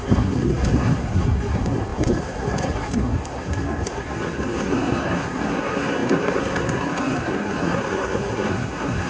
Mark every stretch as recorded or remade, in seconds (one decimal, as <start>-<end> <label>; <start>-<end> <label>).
0.0-9.1 remade